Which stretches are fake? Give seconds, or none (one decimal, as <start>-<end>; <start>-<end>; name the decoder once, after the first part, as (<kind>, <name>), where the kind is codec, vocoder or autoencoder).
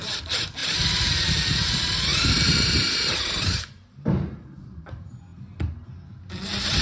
2.1-4.8 (vocoder, BigVGAN v2)